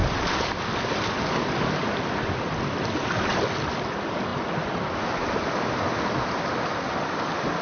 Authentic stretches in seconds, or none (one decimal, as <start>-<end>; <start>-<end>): 0.0-7.6